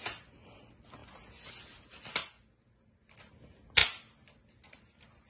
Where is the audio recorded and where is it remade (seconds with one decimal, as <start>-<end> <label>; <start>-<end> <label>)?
0.0-5.3 recorded